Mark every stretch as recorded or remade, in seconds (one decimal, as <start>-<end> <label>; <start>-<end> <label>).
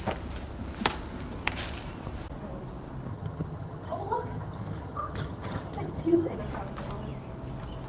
0.0-3.1 recorded; 3.1-6.4 remade; 6.4-7.9 recorded